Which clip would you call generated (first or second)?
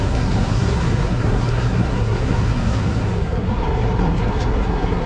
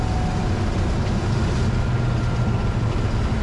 first